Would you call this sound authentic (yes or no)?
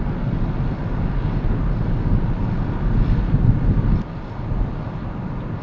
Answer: yes